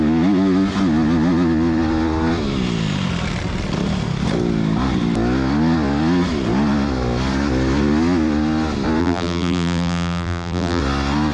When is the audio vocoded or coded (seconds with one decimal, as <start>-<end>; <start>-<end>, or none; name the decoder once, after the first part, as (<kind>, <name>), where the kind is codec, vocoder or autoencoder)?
9.0-10.8 (vocoder, BigVGAN v2)